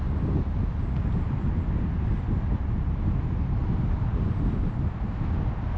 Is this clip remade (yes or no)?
no